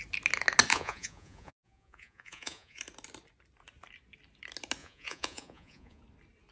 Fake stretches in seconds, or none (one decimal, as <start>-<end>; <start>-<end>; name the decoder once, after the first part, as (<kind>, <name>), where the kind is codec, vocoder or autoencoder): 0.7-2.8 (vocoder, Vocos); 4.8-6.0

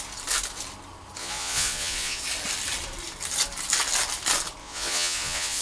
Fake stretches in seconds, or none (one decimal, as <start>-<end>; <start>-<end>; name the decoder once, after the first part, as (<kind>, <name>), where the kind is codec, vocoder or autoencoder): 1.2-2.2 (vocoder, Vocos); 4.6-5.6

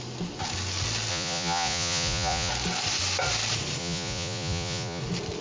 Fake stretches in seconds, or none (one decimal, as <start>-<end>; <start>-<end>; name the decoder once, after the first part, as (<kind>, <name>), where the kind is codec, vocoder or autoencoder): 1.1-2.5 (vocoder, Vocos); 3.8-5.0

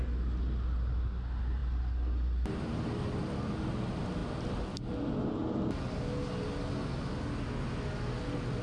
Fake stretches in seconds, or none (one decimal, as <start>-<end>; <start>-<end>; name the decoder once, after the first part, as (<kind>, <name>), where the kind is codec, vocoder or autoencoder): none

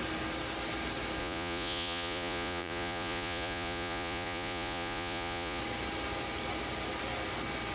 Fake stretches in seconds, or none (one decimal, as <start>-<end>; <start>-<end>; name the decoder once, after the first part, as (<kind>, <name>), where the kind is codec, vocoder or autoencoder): 1.2-5.6 (vocoder, Vocos)